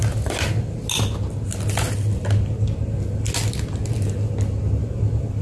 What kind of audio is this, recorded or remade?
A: recorded